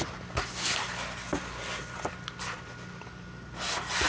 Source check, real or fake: real